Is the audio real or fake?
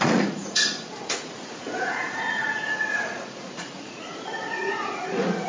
fake